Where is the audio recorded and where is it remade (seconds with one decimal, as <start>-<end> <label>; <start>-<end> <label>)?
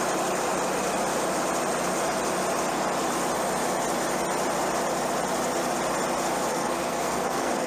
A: 0.0-6.5 recorded; 6.5-7.7 remade